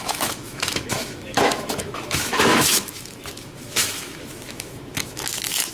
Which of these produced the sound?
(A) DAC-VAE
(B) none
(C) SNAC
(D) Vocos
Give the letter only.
A